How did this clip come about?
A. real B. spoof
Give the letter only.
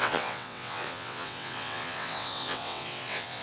B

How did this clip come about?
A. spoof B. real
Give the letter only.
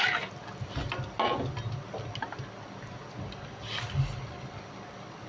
B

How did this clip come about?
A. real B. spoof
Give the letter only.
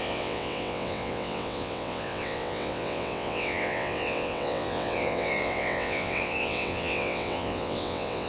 B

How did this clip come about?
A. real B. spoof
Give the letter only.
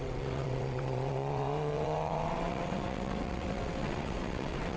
B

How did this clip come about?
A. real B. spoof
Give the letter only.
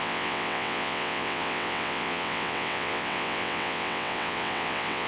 B